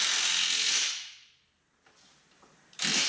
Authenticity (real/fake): real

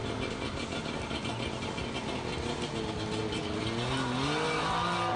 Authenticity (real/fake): real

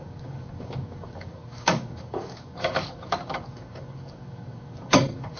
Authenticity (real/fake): fake